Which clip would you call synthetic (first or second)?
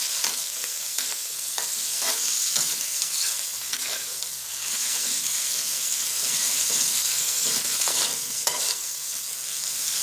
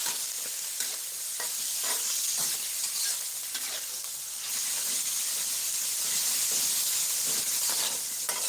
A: first